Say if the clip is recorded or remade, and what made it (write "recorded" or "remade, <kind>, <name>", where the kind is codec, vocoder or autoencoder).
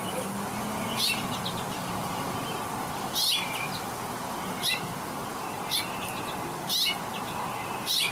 recorded